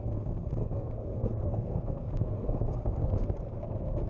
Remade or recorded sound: remade